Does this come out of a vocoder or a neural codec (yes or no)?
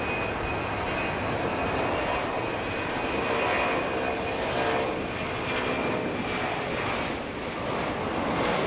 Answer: no